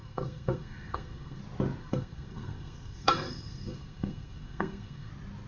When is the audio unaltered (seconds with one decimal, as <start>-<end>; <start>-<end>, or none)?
1.4-1.8; 5.1-5.5